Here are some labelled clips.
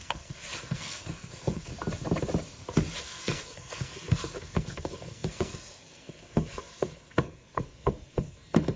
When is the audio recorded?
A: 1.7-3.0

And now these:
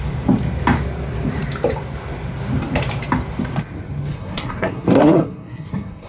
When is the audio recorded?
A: 0.0-4.1

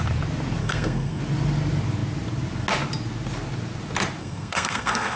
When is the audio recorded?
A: 0.0-0.6; 1.2-4.2